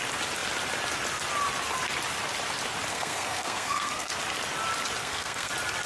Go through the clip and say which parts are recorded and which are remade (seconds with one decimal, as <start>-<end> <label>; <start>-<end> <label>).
0.0-2.9 recorded; 2.9-4.1 remade; 4.1-5.0 recorded; 5.0-5.5 remade; 5.5-5.9 recorded